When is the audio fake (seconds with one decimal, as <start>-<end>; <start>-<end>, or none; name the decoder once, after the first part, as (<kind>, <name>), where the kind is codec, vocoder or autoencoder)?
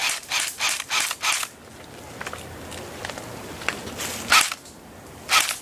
none